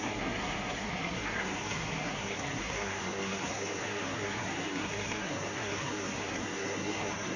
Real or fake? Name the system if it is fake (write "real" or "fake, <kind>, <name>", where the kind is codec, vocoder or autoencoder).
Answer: fake, codec, SNAC